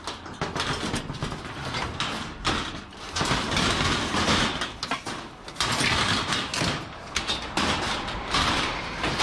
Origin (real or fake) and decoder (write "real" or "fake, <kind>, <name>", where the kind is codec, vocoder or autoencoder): real